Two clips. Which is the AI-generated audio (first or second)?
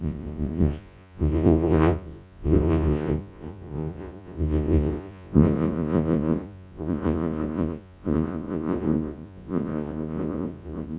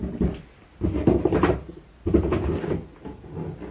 first